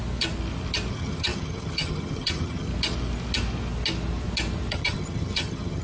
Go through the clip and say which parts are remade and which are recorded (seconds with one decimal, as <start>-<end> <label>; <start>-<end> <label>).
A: 0.0-0.9 recorded; 0.9-2.7 remade; 2.7-4.7 recorded; 4.7-5.8 remade